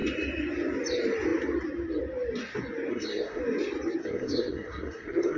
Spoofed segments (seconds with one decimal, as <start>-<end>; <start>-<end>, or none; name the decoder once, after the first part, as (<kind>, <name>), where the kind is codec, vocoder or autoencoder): 2.9-3.4 (codec, SNAC); 4.0-5.4